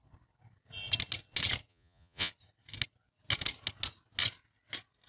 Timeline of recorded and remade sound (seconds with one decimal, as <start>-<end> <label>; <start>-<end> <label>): 0.0-1.7 recorded; 1.7-2.3 remade; 2.3-5.1 recorded